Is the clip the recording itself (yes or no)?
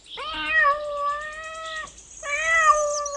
yes